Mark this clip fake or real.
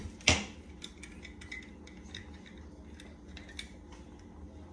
real